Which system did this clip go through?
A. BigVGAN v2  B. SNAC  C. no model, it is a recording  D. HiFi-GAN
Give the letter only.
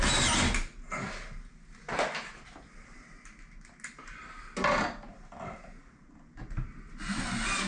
C